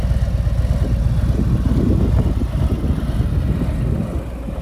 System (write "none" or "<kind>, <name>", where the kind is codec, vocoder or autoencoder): none